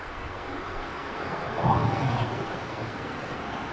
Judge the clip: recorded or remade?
remade